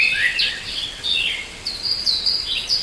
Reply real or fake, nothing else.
fake